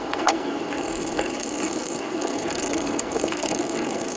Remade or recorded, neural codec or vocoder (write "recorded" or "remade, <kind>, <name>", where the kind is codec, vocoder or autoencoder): remade, codec, SNAC